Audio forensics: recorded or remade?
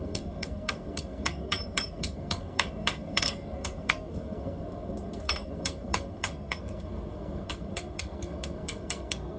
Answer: remade